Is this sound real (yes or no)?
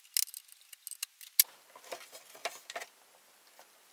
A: yes